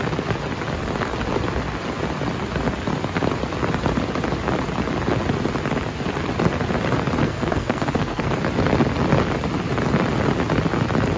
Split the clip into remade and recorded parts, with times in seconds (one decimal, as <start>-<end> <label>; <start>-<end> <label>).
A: 0.0-7.2 recorded; 7.2-8.3 remade; 8.3-11.2 recorded